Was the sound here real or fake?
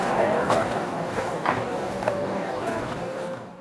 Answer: fake